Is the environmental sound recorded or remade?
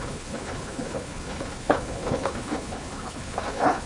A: remade